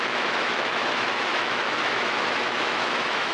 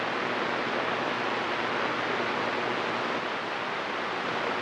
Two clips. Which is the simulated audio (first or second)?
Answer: first